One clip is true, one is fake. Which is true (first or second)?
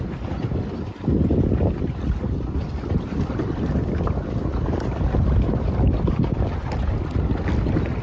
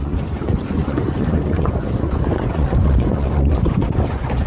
first